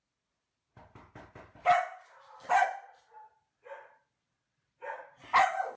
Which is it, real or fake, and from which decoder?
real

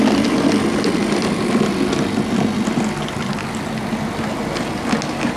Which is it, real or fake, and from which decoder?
real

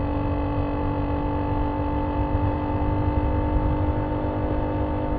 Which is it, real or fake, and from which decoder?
real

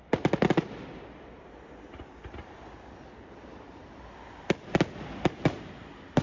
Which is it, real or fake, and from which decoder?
real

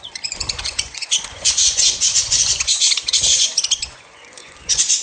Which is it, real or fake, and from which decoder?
fake, vocoder, Vocos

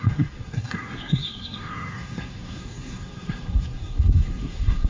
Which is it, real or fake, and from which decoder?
fake, codec, SNAC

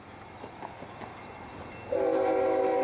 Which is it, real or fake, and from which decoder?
real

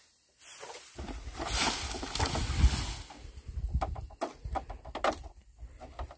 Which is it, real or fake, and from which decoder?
real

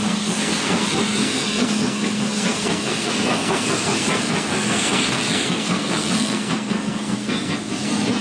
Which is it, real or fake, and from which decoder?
fake, codec, SNAC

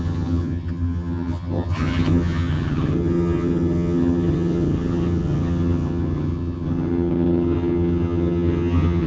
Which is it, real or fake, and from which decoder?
fake, vocoder, HiFi-GAN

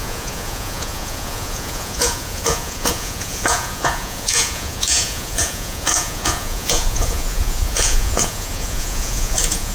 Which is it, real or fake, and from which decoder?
fake, vocoder, Vocos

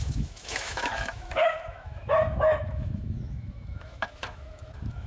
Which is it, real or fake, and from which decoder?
fake, autoencoder, DAC-VAE